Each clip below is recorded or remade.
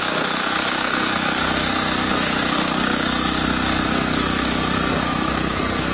remade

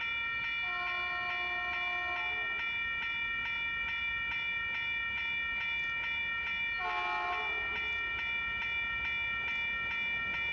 recorded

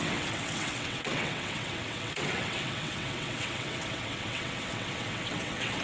remade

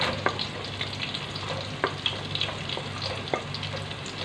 recorded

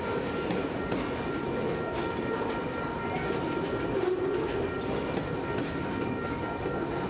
recorded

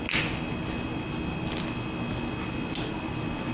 recorded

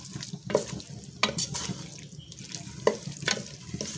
recorded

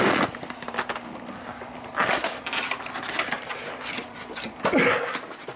remade